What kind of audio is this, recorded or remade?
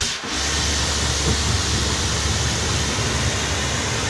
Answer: recorded